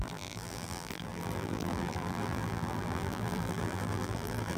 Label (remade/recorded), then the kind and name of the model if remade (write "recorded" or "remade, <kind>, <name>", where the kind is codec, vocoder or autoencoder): remade, vocoder, BigVGAN v2